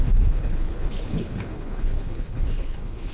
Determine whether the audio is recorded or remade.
remade